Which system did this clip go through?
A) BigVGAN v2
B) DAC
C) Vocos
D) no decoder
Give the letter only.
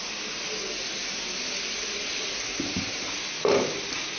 D